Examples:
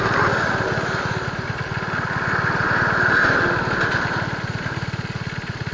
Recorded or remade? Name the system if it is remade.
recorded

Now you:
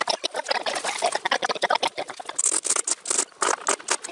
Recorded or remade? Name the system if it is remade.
recorded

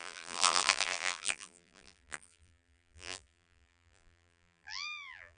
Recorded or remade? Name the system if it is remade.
remade, vocoder, BigVGAN v2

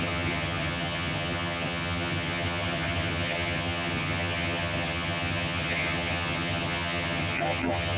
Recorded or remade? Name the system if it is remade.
remade, vocoder, HiFi-GAN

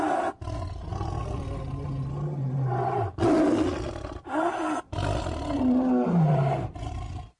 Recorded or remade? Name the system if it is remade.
recorded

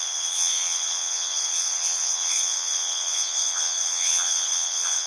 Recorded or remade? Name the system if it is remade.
remade, vocoder, WaveNeXt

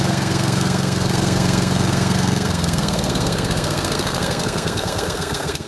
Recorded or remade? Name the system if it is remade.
remade, codec, SNAC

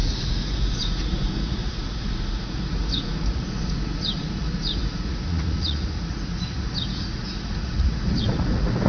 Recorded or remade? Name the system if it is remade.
remade, vocoder, Vocos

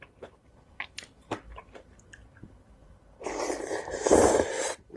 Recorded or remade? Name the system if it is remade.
remade, vocoder, BigVGAN v2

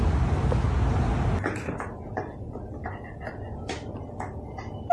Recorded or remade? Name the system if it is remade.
recorded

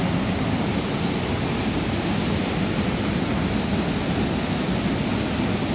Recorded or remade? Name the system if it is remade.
recorded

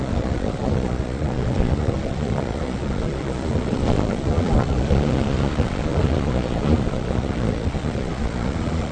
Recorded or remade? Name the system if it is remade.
remade, vocoder, Vocos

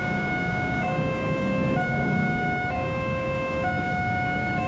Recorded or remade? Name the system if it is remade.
remade, codec, DAC